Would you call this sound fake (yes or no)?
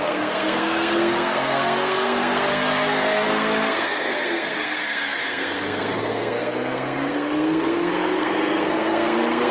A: yes